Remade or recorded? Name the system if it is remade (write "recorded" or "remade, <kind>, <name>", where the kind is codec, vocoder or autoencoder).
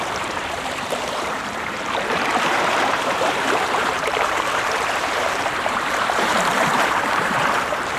remade, vocoder, BigVGAN v2